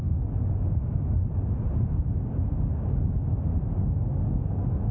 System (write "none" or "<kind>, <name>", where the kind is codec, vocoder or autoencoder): none